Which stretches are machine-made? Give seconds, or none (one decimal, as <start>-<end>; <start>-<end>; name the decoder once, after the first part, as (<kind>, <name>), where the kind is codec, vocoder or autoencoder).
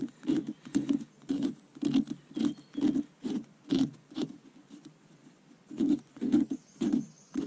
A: 0.0-1.7 (vocoder, Vocos); 3.2-7.5